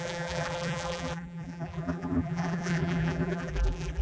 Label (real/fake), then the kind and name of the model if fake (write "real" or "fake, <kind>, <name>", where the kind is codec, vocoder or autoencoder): fake, vocoder, BigVGAN v2